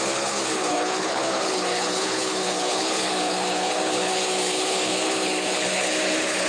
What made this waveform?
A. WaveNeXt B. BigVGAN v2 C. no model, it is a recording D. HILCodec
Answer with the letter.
D